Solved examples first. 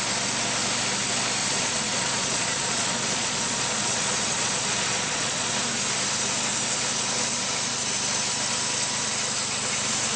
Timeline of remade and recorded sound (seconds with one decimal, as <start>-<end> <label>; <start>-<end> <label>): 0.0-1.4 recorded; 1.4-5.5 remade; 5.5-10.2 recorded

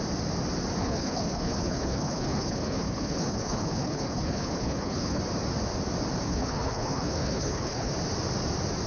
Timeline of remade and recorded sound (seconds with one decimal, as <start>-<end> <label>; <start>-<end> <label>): 0.0-0.8 recorded; 0.8-5.2 remade; 5.2-6.3 recorded; 6.3-7.9 remade; 7.9-8.9 recorded

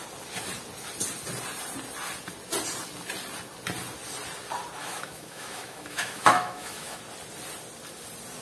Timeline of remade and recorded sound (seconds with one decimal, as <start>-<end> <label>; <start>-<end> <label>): 0.0-4.8 recorded; 4.8-7.0 remade; 7.0-8.4 recorded